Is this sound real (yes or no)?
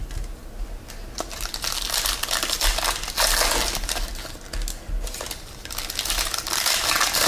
yes